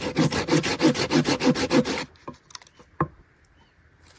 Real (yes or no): yes